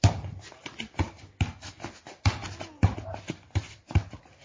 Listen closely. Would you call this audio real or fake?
real